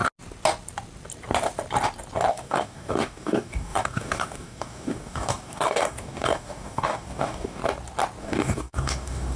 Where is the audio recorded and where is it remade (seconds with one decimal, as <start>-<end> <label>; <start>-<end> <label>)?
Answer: 0.0-2.3 recorded; 2.3-7.6 remade; 7.6-8.2 recorded; 8.2-9.4 remade